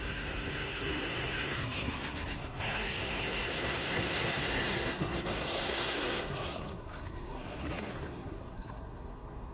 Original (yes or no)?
no